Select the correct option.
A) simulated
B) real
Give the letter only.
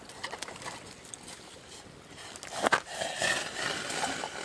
B